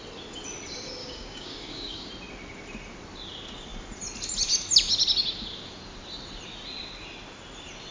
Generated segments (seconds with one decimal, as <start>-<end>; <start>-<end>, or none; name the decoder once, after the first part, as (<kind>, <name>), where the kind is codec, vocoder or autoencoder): 1.0-2.1 (codec, DAC)